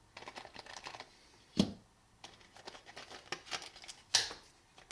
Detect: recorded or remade recorded